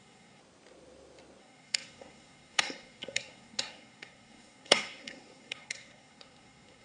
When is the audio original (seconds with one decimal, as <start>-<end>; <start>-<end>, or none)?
0.4-1.4